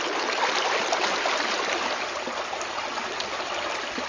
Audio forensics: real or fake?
real